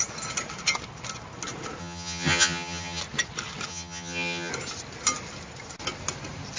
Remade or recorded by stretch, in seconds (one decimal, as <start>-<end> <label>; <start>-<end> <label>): 0.0-1.8 recorded; 1.8-3.0 remade; 3.0-3.7 recorded; 3.7-4.5 remade; 4.5-6.6 recorded

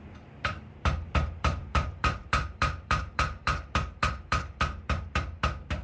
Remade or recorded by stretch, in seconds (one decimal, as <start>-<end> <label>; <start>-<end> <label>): 0.0-5.8 remade

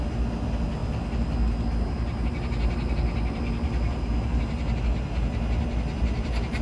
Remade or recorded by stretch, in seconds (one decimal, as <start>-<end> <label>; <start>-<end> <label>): 0.0-6.6 recorded

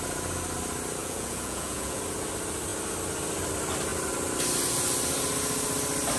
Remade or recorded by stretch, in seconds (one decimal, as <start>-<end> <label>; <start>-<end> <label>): 0.0-1.0 recorded; 1.0-2.0 remade; 2.0-6.2 recorded

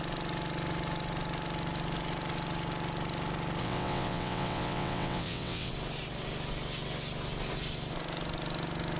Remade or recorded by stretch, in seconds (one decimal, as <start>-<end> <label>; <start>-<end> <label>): 0.0-3.6 recorded; 3.6-5.7 remade; 5.7-9.0 recorded

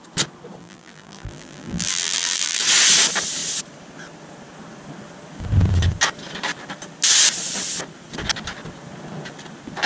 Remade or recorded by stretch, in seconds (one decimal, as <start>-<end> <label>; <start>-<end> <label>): 0.0-0.6 recorded; 0.6-2.6 remade; 2.6-9.9 recorded